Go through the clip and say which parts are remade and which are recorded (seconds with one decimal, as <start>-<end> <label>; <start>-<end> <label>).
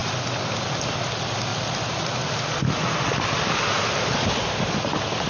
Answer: 0.0-5.3 recorded